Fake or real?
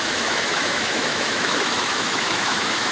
fake